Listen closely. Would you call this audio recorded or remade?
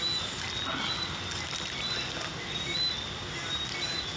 recorded